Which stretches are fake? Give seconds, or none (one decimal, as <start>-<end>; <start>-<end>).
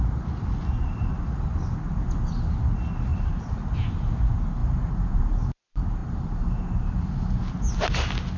3.1-3.7; 4.6-5.5; 6.0-7.4